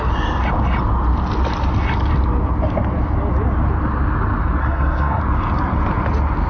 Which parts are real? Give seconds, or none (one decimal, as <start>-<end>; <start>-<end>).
0.0-4.6; 5.2-6.5